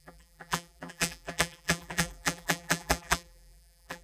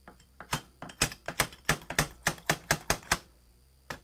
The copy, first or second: first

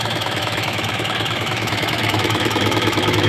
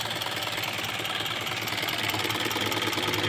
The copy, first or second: first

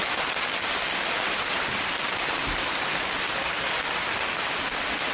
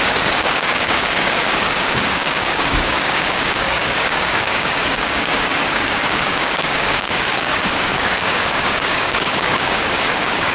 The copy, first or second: second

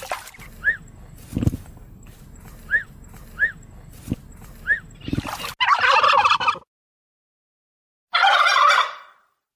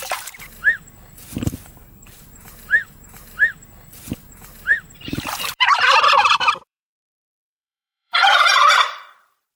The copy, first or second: second